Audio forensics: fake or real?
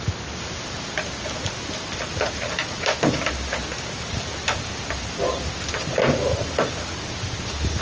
real